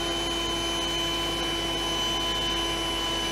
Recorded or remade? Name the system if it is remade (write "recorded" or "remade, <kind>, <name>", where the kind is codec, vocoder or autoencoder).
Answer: recorded